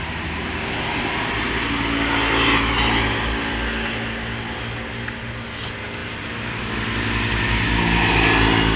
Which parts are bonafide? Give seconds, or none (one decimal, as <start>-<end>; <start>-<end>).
0.0-8.8